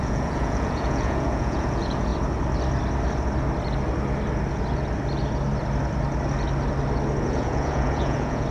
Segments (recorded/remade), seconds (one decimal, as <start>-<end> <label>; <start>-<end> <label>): 0.0-2.1 remade; 2.1-7.2 recorded; 7.2-8.5 remade